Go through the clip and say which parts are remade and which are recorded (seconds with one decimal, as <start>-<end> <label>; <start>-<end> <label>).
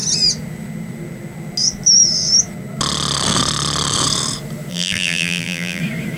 0.0-4.7 recorded; 4.7-5.8 remade; 5.8-6.2 recorded